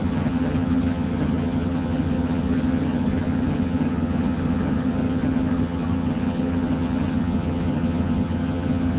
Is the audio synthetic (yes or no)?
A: yes